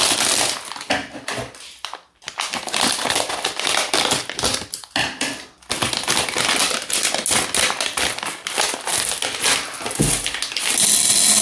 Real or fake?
real